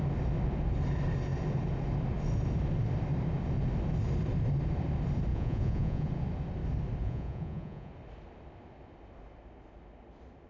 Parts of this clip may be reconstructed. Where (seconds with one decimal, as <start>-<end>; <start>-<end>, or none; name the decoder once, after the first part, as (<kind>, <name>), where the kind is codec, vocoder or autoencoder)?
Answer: 5.3-6.1 (vocoder, Vocos); 7.0-7.9